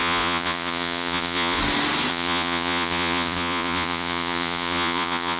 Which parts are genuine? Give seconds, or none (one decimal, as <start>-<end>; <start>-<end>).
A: 1.6-2.1